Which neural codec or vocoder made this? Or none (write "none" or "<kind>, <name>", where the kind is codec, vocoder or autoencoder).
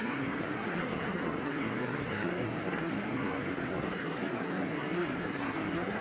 codec, SNAC